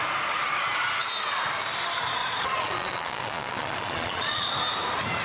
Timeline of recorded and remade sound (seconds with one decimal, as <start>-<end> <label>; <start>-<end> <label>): 0.0-2.2 recorded; 2.2-4.5 remade; 4.5-5.2 recorded